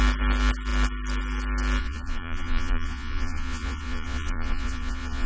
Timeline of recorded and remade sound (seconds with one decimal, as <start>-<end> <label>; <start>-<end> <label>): 0.0-1.8 recorded; 1.8-5.3 remade